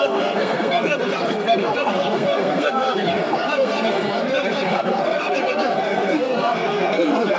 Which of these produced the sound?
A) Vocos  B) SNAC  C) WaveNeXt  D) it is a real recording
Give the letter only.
B